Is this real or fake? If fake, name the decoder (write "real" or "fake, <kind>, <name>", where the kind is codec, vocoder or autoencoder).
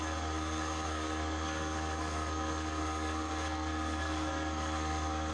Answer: fake, codec, SNAC